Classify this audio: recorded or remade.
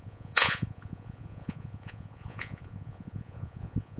remade